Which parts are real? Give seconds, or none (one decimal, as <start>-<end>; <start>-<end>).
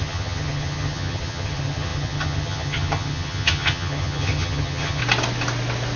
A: 5.0-6.0